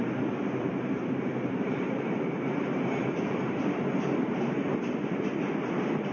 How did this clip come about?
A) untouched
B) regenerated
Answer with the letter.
B